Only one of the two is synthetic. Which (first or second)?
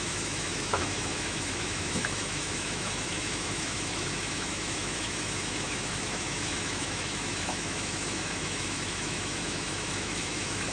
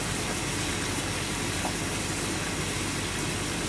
first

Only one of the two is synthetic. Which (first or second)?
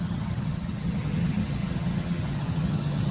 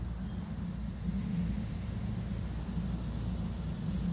first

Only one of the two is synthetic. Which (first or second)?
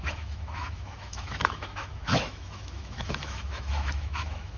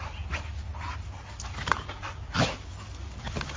first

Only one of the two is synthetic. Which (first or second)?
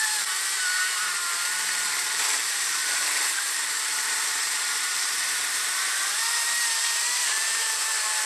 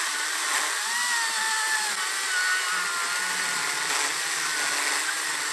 first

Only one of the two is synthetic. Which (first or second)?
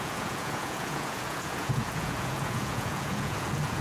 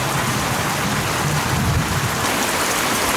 first